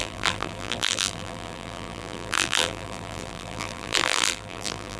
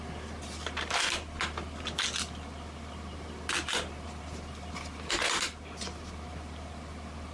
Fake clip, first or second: first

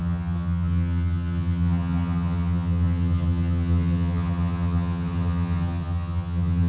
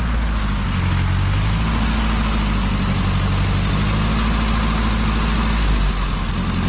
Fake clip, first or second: first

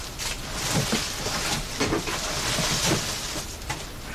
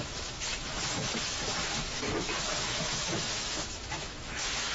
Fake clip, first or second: second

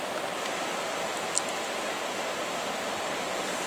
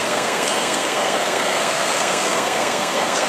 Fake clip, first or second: second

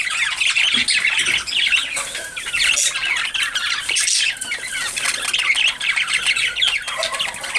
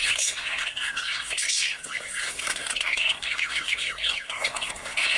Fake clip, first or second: second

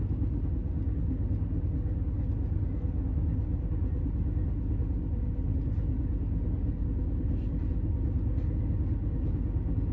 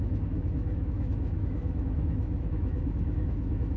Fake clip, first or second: second